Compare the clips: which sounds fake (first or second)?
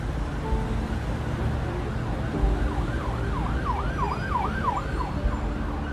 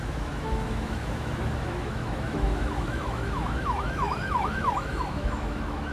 second